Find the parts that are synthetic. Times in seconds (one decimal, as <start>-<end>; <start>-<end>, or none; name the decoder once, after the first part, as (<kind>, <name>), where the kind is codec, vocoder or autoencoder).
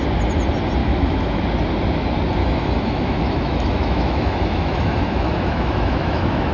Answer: 0.8-1.4 (autoencoder, DAC-VAE); 2.4-6.5